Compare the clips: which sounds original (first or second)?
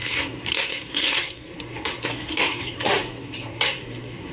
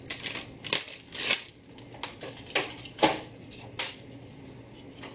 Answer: second